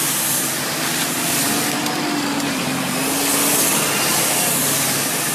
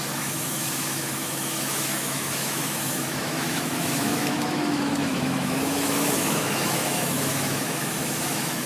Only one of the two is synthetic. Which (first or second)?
second